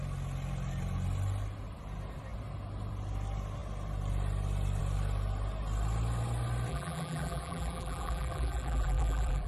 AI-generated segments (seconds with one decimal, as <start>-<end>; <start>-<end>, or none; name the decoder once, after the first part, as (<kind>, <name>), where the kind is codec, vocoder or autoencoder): 6.7-9.5 (vocoder, BigVGAN v2)